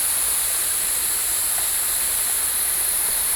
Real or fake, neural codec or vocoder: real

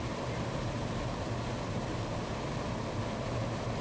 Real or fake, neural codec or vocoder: real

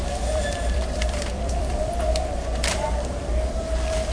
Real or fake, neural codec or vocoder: fake, vocoder, BigVGAN v2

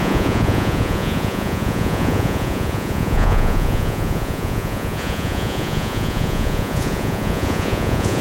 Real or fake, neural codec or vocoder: fake, vocoder, Vocos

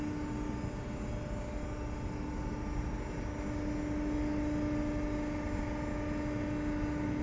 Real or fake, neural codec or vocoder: real